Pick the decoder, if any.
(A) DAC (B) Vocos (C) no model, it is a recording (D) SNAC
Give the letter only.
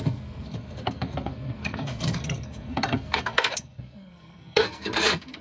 D